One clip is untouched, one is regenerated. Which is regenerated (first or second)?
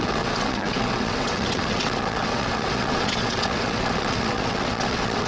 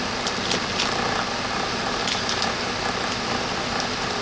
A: first